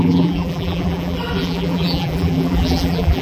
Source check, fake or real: fake